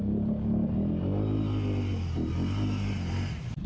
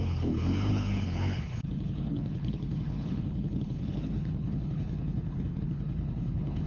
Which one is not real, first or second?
second